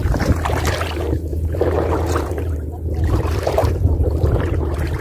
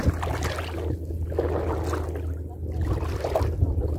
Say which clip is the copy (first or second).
first